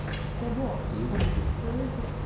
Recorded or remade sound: recorded